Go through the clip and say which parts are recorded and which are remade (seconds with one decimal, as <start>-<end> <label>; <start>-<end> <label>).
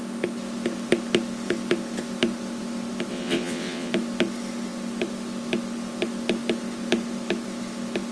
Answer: 0.0-3.1 recorded; 3.1-3.9 remade; 3.9-8.1 recorded